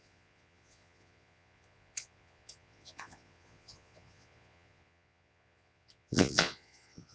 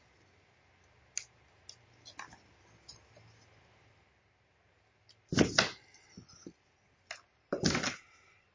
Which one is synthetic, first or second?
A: first